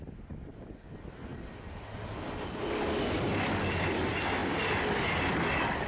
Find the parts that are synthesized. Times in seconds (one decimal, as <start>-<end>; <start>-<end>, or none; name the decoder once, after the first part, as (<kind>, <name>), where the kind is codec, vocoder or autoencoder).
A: none